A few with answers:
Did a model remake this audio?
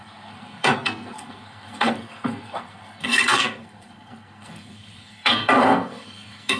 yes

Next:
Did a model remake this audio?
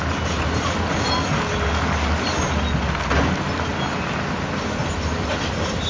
no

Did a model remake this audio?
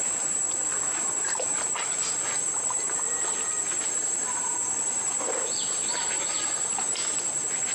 yes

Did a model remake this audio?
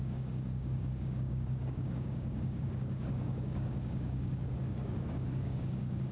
yes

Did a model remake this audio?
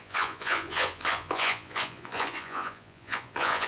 yes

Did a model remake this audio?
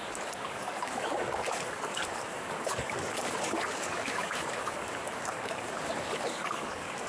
yes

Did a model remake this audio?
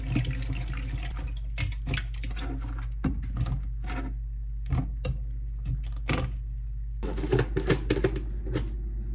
no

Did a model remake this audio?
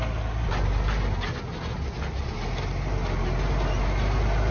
no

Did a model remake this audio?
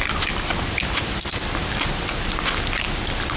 no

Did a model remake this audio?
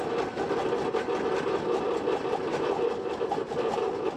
yes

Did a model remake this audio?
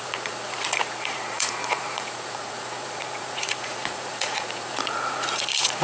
yes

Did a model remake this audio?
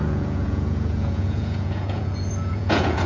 yes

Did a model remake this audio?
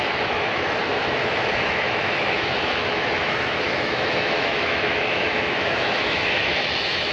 yes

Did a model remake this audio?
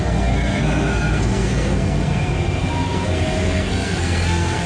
yes